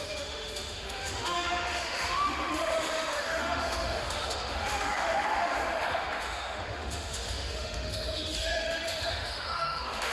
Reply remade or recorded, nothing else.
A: remade